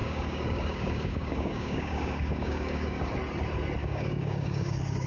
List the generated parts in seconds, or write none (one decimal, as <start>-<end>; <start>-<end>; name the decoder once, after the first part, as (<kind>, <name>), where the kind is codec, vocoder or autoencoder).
0.0-3.1 (codec, DAC); 3.8-5.1